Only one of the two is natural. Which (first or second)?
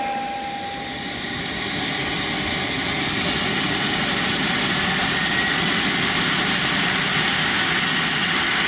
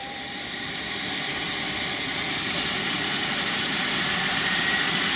first